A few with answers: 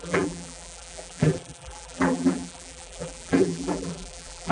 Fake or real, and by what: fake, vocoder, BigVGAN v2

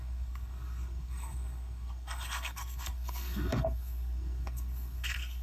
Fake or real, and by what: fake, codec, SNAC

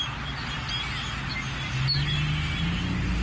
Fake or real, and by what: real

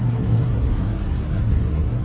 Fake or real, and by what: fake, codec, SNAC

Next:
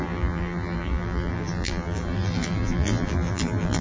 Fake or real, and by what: fake, vocoder, BigVGAN v2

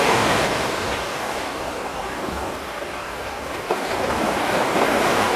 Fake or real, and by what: fake, codec, DAC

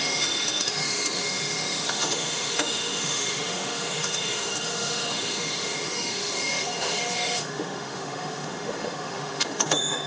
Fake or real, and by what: fake, autoencoder, DAC-VAE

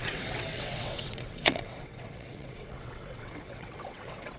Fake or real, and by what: fake, vocoder, WaveNeXt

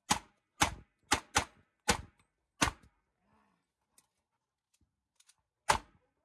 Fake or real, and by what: real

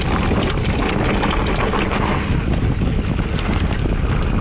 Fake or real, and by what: real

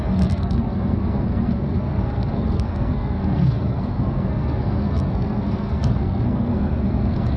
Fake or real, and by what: fake, codec, SNAC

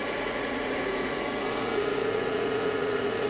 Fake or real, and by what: fake, vocoder, Vocos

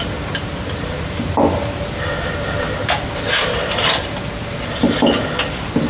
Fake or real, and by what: real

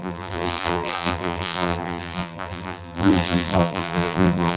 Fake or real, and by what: fake, vocoder, BigVGAN v2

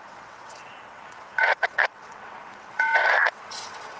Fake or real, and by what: fake, vocoder, WaveNeXt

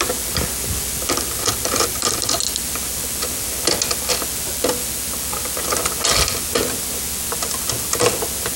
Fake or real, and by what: real